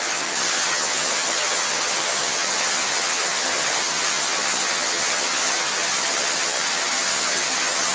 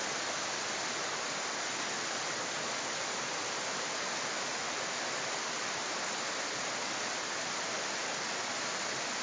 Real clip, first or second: second